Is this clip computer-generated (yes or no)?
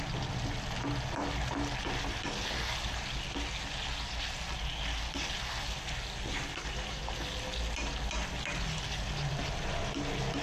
no